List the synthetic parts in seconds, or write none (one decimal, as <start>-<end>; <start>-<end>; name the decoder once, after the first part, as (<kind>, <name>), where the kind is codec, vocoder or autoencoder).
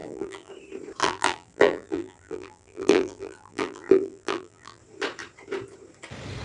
0.0-0.5 (vocoder, BigVGAN v2); 1.0-4.8